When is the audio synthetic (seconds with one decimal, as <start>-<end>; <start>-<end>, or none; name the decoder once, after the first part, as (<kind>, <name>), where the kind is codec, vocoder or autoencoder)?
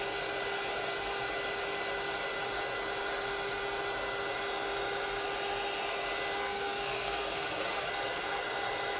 6.4-7.9 (codec, SNAC)